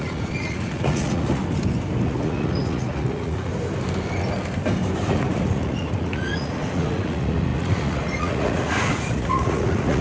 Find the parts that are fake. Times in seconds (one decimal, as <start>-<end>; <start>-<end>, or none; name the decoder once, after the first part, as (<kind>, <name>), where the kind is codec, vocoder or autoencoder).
0.0-1.4 (vocoder, Vocos); 2.0-3.5; 5.1-10.0